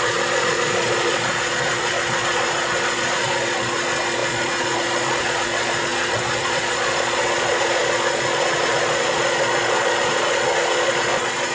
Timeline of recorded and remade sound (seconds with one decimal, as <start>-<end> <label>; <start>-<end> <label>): 0.0-11.5 remade